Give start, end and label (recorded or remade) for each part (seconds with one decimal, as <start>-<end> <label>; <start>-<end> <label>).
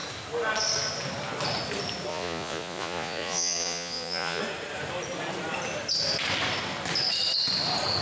0.0-2.1 recorded; 2.1-4.4 remade; 4.4-8.0 recorded